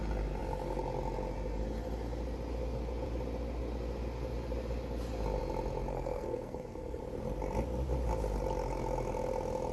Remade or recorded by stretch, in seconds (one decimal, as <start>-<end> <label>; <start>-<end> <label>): 0.0-5.9 recorded; 5.9-7.0 remade; 7.0-9.7 recorded